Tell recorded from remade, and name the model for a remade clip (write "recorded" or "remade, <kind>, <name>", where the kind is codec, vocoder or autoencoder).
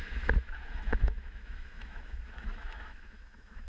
remade, autoencoder, DAC-VAE